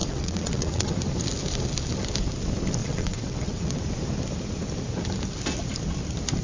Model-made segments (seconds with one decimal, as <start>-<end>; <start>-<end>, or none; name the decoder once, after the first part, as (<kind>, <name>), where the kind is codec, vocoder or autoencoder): 0.0-0.9 (vocoder, WaveNeXt); 2.8-3.8